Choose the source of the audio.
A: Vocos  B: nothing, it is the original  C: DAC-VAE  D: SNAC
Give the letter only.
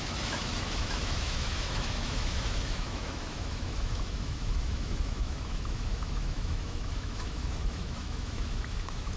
C